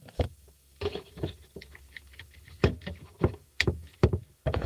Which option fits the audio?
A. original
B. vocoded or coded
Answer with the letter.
B